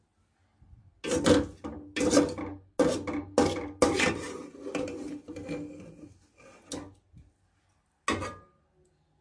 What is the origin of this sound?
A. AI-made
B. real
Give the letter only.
B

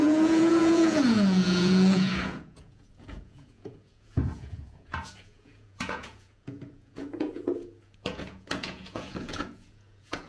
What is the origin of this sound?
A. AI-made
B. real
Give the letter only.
A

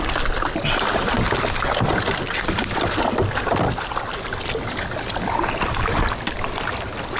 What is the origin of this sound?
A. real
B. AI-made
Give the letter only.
A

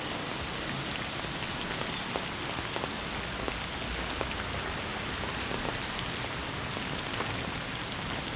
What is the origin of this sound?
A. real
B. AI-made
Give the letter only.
A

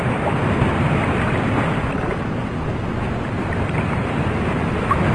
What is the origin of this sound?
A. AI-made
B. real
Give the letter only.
B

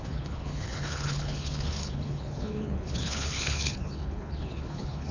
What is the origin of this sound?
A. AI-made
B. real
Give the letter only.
A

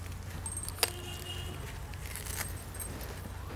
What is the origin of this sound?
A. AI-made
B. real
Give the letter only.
B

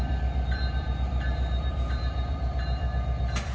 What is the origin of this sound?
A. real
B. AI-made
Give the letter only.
B